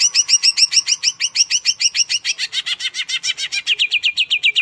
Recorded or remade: recorded